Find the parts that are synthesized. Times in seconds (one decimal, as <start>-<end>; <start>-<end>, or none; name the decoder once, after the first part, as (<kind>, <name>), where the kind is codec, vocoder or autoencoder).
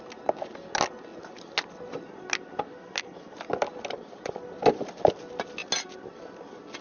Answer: none